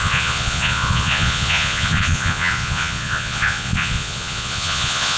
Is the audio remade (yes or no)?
yes